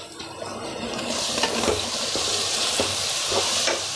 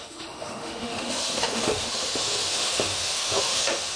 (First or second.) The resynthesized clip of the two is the second